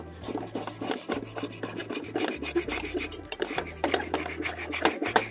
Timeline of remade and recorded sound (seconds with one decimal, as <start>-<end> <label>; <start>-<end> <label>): 0.0-1.8 recorded; 1.8-5.3 remade